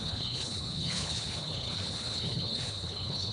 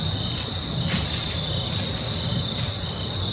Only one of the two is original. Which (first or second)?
second